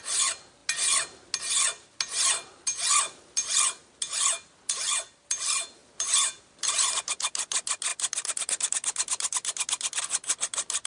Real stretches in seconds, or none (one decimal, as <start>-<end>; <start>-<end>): 0.0-10.9